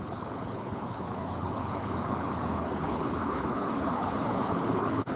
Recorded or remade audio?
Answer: remade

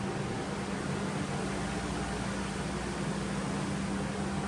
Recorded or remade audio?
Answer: recorded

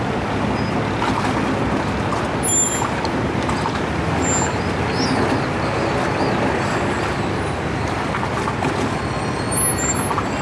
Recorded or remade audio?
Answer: recorded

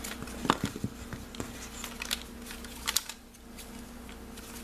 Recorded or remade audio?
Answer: recorded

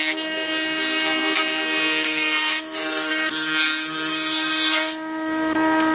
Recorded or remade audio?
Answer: remade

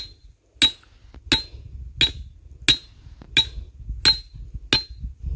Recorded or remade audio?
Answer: recorded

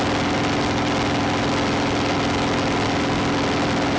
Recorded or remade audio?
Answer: recorded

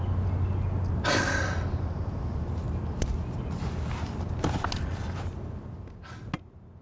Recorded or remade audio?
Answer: recorded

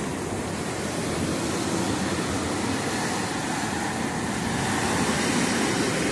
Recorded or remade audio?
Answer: recorded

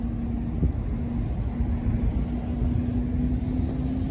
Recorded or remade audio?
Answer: recorded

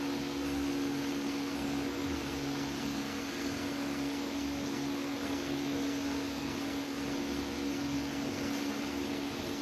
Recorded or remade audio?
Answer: remade